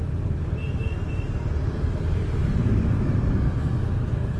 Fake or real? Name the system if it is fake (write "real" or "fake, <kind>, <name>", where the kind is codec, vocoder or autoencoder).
real